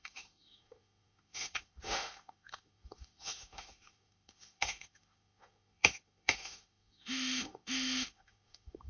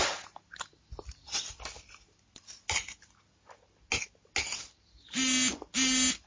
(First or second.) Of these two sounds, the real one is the second